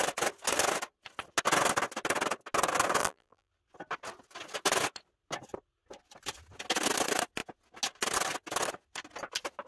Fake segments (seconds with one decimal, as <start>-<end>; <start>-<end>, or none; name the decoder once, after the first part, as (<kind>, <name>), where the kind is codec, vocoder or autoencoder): 3.0-3.5 (vocoder, BigVGAN v2)